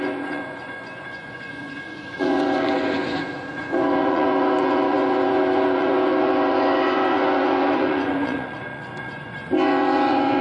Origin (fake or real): fake